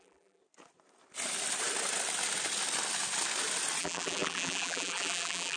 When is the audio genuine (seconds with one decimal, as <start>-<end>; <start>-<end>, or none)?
0.4-3.8

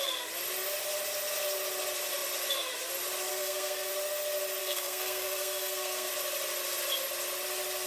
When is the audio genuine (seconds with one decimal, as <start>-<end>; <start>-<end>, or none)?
0.0-3.3; 3.9-4.6; 6.1-7.9